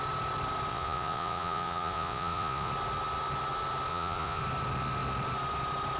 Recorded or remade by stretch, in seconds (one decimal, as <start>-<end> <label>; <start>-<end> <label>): 0.0-0.7 recorded; 0.7-2.7 remade; 2.7-3.9 recorded; 3.9-4.4 remade; 4.4-6.0 recorded